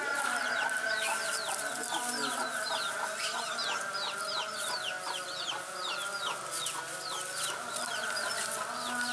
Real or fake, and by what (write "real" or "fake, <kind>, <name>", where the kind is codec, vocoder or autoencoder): real